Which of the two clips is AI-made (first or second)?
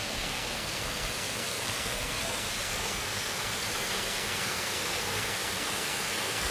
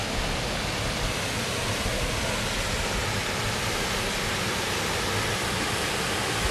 first